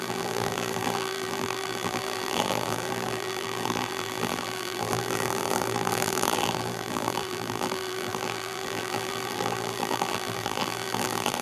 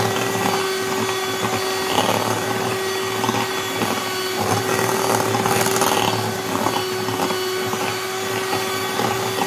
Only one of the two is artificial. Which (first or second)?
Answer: first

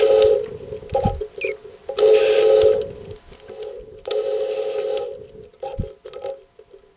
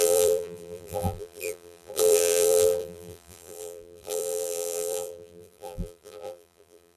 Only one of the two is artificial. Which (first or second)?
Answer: second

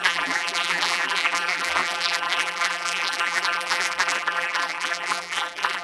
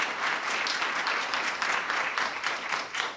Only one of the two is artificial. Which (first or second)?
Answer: first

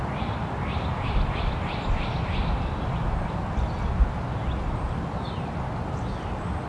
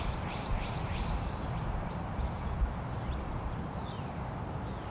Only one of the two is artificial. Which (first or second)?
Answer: second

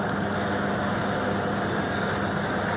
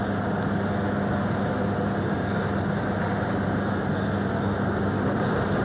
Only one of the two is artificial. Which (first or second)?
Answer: first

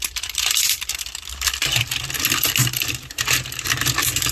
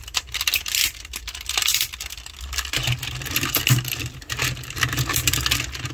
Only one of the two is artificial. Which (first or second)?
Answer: first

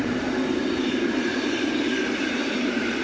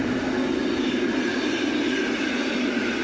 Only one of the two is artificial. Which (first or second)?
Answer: first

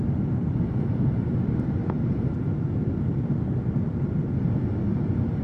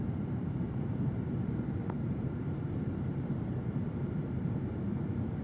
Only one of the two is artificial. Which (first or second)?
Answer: second